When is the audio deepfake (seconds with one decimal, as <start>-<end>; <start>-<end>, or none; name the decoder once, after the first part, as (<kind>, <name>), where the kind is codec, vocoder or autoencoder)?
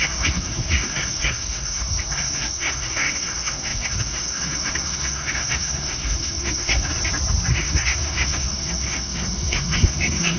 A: 0.0-6.9 (codec, SNAC); 7.5-10.4